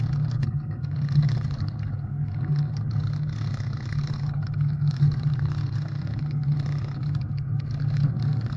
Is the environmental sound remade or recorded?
remade